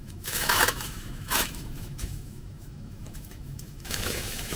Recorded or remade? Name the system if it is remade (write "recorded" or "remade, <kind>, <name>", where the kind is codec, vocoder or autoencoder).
remade, autoencoder, DAC-VAE